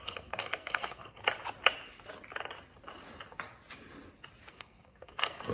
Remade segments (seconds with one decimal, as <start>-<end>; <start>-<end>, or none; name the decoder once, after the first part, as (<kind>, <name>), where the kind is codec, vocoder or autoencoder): 0.0-1.2 (codec, SNAC); 4.5-5.5